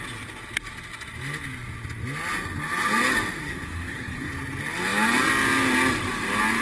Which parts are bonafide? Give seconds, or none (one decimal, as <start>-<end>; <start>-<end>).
0.0-3.4; 4.3-6.6

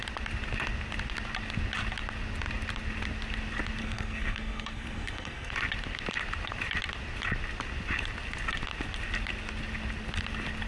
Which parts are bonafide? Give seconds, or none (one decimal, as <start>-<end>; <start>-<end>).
0.0-3.8; 5.5-10.7

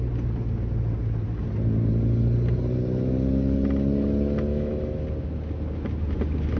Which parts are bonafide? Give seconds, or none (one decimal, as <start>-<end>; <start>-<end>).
0.0-4.5; 5.0-6.6

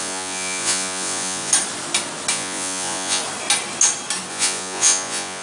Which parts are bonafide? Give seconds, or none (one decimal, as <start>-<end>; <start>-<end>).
1.5-2.3; 3.2-4.3

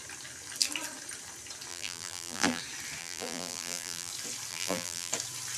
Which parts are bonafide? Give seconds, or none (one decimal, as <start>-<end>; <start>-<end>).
0.0-1.7; 2.6-3.0; 4.1-4.5; 5.1-5.6

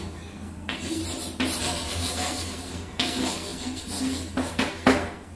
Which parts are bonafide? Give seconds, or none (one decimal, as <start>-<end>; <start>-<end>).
1.0-1.6

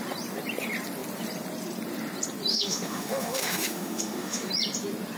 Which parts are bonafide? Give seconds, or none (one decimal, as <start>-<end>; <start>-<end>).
0.0-2.5; 4.5-5.2

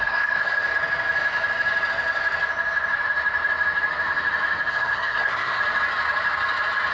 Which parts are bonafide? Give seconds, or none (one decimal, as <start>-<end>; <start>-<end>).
0.7-4.7; 5.6-6.9